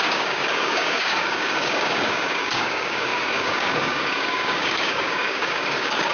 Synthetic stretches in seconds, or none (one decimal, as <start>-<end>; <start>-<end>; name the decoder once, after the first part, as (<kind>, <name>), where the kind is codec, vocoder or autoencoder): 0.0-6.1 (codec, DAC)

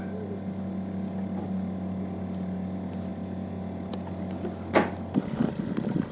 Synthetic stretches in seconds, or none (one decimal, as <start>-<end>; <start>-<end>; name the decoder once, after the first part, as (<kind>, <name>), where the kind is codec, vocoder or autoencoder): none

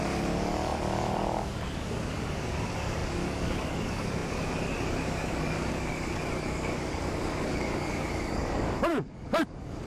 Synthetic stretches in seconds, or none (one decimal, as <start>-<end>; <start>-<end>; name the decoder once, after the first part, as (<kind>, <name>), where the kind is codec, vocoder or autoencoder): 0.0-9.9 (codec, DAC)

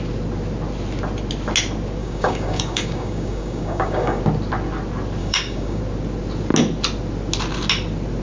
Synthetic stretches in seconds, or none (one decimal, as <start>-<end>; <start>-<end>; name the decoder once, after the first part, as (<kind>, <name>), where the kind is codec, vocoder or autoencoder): 2.0-4.2 (codec, DAC); 5.2-5.8

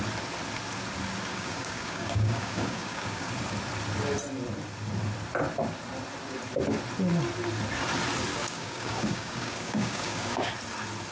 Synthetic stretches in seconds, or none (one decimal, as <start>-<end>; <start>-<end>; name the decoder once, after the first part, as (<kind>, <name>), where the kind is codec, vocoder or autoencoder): 1.3-3.3 (codec, DAC); 8.3-10.5